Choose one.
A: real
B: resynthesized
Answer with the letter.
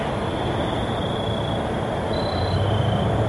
A